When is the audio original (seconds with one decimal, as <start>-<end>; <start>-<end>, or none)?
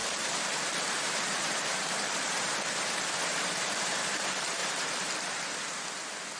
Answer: 2.9-3.3; 4.0-4.6; 5.7-6.4